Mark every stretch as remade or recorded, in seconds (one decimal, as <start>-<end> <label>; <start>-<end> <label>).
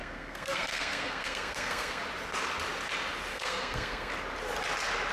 0.0-2.0 remade; 2.0-3.3 recorded; 3.3-4.1 remade; 4.1-5.1 recorded